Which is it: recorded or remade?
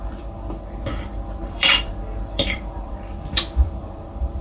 remade